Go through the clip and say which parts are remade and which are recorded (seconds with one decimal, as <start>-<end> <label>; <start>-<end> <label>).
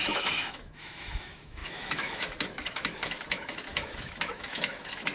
0.0-5.1 remade